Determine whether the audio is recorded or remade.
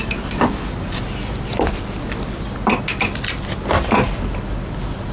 recorded